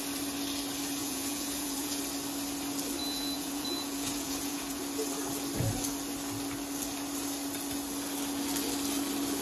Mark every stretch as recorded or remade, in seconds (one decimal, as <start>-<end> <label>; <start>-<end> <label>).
0.0-1.0 recorded; 1.0-2.0 remade; 2.0-3.0 recorded; 3.0-4.8 remade; 4.8-9.4 recorded